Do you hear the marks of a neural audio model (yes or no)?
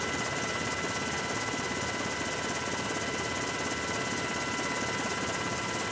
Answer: no